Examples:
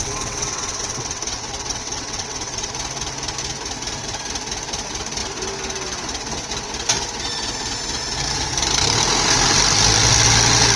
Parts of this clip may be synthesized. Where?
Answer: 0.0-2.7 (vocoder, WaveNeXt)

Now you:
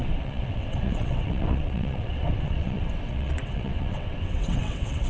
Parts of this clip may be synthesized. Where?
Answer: 0.0-5.1 (vocoder, WaveNeXt)

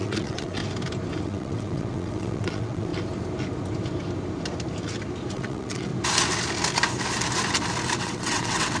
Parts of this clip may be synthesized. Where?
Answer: 0.0-0.6 (vocoder, WaveNeXt); 1.2-2.9; 5.3-5.9; 8.0-8.8

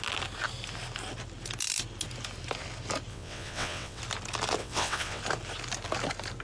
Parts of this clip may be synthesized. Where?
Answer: 3.1-4.0 (vocoder, WaveNeXt); 4.6-5.2

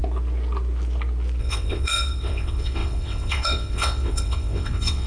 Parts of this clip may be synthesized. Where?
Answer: 1.4-5.1 (vocoder, WaveNeXt)

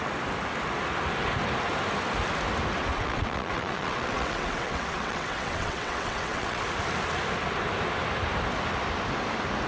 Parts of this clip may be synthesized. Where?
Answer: 2.9-6.6 (vocoder, WaveNeXt)

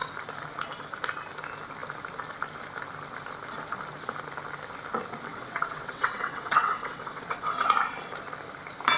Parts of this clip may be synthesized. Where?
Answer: 5.3-7.7 (vocoder, WaveNeXt)